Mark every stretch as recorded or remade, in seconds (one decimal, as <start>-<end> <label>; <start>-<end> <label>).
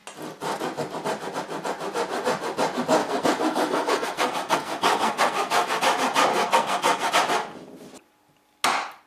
0.0-3.0 recorded; 3.0-5.8 remade; 5.8-6.3 recorded; 6.3-7.1 remade; 7.1-9.1 recorded